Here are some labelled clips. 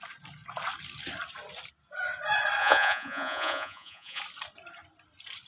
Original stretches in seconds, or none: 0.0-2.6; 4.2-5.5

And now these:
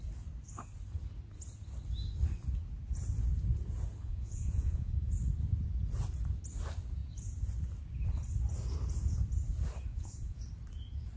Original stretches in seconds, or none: 0.0-4.0; 5.1-9.9; 10.4-11.2

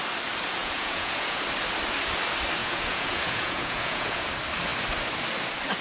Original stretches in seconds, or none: 0.0-0.6; 1.4-2.6; 4.3-5.8

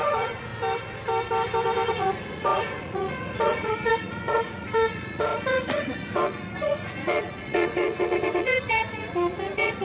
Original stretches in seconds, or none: 0.5-1.9

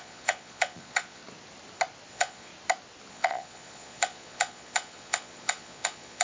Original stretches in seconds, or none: 1.2-2.1; 2.5-3.1

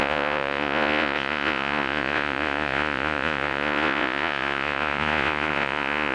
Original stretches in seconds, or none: none

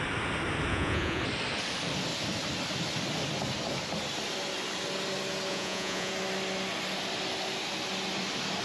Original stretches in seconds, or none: 0.0-0.7; 1.2-5.5; 6.1-8.6

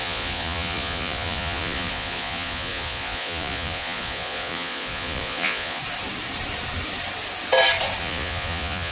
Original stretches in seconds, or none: 5.8-8.0